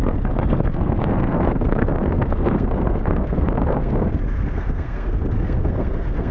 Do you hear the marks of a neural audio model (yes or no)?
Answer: yes